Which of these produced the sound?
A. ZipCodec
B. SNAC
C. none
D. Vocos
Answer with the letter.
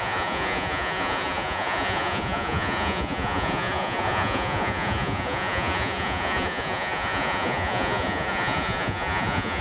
D